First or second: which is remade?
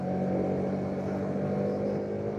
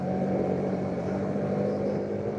second